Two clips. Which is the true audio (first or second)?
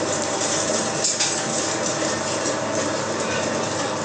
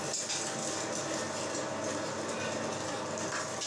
second